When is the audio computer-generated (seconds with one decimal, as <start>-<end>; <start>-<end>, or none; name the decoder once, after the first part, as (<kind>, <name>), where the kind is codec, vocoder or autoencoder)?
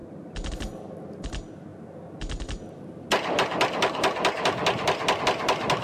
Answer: none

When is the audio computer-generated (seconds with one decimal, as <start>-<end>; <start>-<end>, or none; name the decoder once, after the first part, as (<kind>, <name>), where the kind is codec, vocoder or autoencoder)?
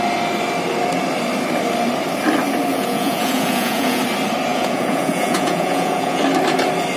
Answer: 2.7-4.0 (vocoder, Vocos); 4.5-6.2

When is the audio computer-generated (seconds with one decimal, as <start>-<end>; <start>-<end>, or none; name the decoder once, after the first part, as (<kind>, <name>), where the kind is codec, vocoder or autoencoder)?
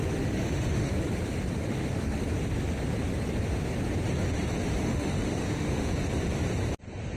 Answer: 0.0-1.0 (autoencoder, DAC-VAE); 1.6-2.2; 4.9-5.9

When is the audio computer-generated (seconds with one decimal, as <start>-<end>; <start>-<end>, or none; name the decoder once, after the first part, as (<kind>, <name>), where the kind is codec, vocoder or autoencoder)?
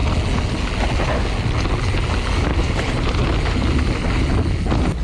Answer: 2.5-3.1 (vocoder, BigVGAN v2)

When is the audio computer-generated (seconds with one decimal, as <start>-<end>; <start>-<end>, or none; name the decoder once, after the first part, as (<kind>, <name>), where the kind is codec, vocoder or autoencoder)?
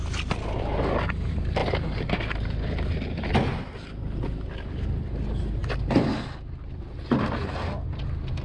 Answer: none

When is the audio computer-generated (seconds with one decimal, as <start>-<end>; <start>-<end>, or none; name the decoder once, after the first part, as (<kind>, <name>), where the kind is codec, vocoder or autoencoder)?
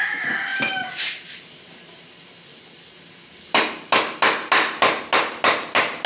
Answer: none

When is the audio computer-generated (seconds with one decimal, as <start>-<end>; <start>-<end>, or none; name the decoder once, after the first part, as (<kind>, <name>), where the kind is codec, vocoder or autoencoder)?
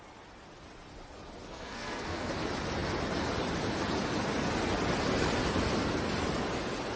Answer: 1.5-2.3 (codec, SNAC)